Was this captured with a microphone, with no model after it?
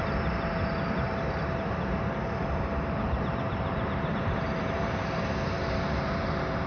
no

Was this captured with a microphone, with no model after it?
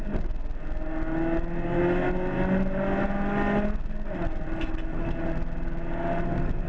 yes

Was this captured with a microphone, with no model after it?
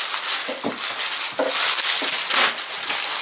yes